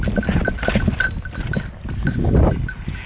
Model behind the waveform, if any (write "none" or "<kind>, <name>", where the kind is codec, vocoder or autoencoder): none